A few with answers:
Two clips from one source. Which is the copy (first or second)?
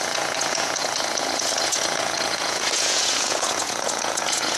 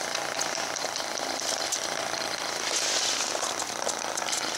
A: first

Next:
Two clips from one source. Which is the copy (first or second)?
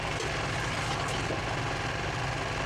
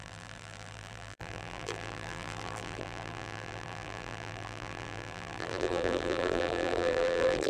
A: second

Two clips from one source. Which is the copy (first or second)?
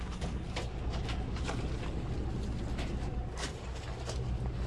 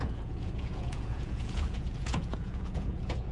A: second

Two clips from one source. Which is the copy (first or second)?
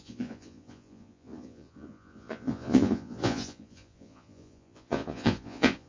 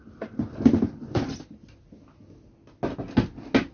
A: first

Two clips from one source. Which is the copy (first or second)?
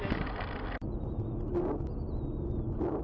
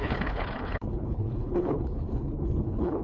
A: second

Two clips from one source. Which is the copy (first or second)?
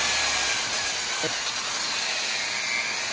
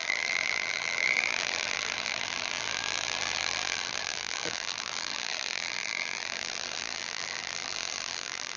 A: second